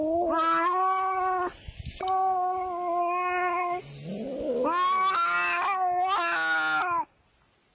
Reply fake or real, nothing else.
real